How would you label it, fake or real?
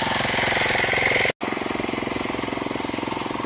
real